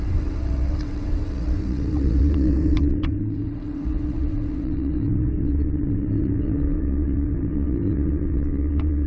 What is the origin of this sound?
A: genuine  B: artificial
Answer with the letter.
B